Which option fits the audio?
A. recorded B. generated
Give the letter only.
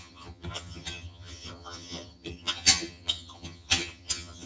B